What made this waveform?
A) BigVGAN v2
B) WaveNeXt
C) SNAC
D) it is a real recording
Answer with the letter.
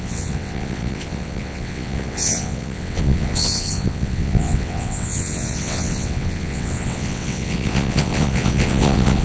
B